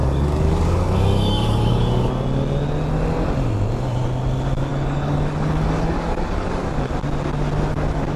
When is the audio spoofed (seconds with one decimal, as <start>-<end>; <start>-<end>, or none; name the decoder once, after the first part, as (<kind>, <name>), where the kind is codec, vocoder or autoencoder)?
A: 0.0-2.1 (codec, DAC); 4.7-6.9; 7.7-8.2